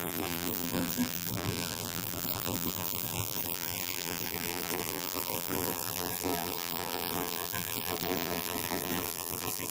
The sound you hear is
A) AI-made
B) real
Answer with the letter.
A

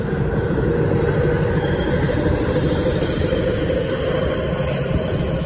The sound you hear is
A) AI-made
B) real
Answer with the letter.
B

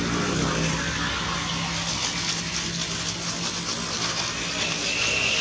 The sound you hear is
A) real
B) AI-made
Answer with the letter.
A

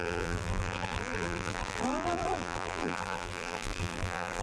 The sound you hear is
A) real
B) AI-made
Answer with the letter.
B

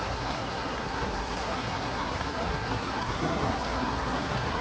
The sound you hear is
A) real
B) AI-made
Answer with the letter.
B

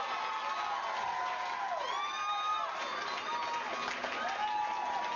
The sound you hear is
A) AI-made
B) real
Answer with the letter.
B